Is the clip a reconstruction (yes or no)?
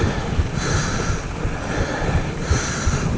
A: no